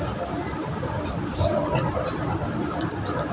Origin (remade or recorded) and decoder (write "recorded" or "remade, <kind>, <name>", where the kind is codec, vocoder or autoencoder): recorded